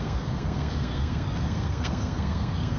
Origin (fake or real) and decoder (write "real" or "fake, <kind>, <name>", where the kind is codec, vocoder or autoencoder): fake, codec, SNAC